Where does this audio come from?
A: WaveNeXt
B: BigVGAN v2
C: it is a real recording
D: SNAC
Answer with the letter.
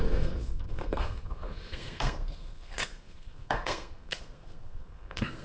D